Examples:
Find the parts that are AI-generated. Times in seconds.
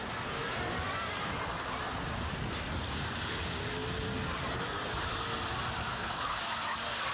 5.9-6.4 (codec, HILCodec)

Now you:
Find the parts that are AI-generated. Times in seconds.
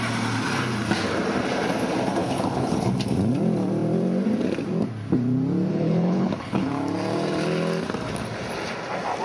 2.2-2.8 (codec, HILCodec); 5.7-6.7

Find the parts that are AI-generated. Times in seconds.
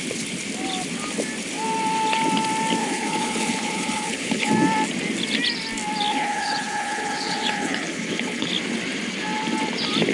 2.8-4.5 (codec, HILCodec); 6.1-8.5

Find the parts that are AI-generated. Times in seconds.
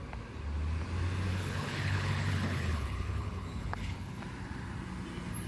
1.3-4.2 (codec, HILCodec)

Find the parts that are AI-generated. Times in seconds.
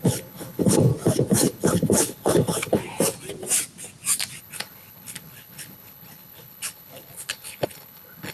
0.0-0.9 (codec, HILCodec); 1.5-2.8; 4.4-8.3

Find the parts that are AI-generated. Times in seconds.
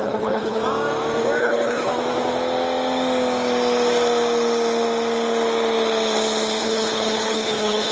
0.0-0.6 (codec, HILCodec); 1.4-1.9; 6.6-7.9